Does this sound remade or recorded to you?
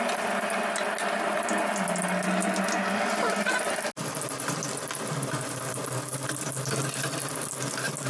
recorded